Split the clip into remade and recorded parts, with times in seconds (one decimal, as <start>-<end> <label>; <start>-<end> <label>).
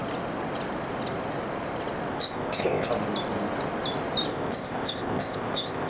0.0-2.1 recorded; 2.1-2.9 remade; 2.9-4.3 recorded; 4.3-5.9 remade